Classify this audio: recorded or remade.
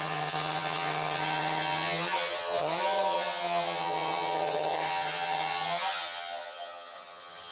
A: remade